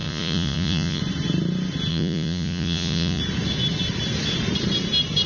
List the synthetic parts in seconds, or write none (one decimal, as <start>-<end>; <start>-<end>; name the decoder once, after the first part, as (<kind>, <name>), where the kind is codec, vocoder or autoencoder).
0.0-1.0 (vocoder, Vocos); 1.9-3.2